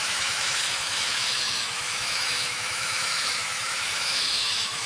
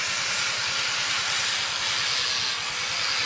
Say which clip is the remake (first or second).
first